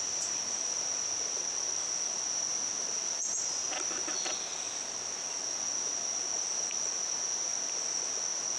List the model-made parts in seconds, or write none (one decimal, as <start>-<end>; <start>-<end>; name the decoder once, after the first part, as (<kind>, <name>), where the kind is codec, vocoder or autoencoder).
none